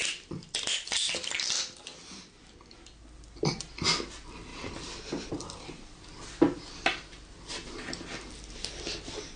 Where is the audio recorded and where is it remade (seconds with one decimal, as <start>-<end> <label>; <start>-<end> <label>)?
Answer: 0.0-4.5 recorded; 4.5-5.3 remade; 5.3-9.4 recorded